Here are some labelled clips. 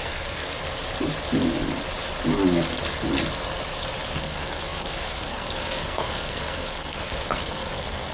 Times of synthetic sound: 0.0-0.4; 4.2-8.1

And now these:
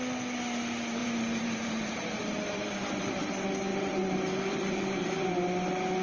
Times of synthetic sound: 1.0-3.2; 3.7-5.3